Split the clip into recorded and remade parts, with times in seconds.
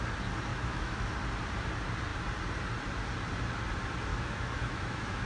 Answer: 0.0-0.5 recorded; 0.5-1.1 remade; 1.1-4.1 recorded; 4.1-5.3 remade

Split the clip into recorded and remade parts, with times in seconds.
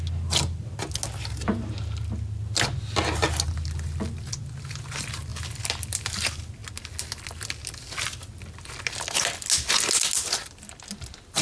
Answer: 0.0-11.4 recorded